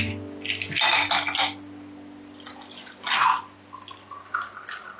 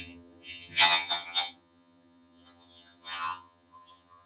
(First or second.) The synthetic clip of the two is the second